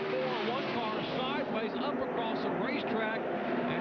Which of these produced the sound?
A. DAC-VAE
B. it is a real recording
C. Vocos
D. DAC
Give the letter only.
B